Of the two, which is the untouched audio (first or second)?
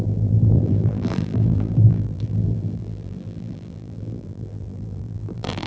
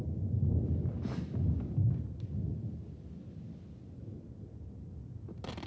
second